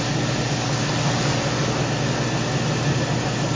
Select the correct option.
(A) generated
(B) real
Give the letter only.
B